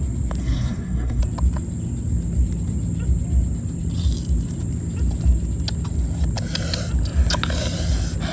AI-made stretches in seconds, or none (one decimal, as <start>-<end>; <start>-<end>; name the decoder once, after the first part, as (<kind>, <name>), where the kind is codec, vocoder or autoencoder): 0.4-1.2 (codec, SNAC)